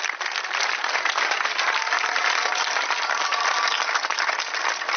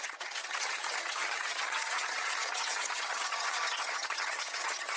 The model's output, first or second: second